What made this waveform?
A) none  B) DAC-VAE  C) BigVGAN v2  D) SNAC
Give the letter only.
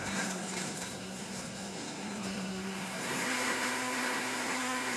D